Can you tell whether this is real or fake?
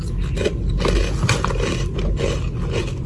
real